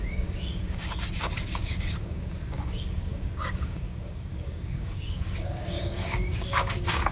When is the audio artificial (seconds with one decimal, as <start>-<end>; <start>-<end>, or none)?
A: 0.0-7.1